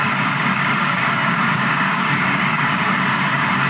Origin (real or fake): fake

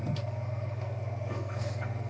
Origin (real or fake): fake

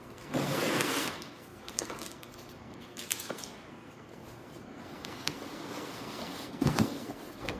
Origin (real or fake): fake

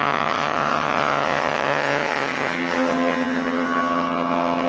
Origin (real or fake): fake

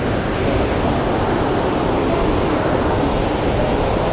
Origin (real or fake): real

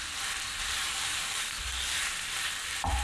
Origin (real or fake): real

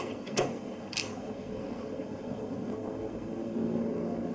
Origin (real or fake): fake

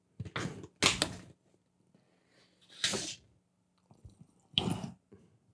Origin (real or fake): real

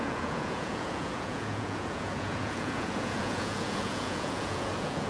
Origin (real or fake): fake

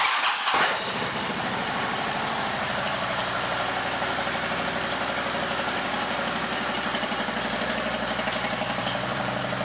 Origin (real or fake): fake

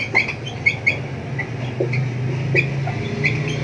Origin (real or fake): real